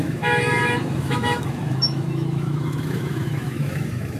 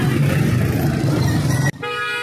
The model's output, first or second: first